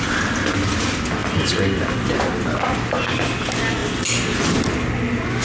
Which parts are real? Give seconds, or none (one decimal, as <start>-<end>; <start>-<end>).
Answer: 0.0-5.4

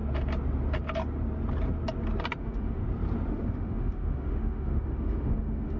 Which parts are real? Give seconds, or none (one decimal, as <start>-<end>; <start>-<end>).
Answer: 0.0-2.4; 2.8-3.3

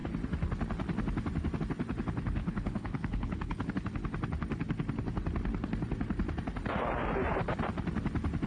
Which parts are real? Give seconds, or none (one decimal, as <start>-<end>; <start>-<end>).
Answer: 0.0-2.4; 3.7-8.5

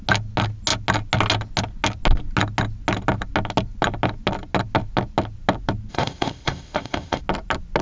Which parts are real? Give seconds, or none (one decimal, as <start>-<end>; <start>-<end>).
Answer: 0.0-5.9; 7.2-7.8

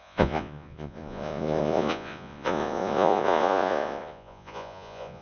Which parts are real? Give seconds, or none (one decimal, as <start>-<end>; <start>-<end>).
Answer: none

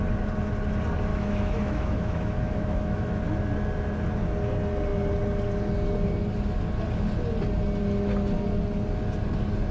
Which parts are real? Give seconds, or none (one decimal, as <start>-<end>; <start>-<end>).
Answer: 0.0-1.1; 3.2-9.7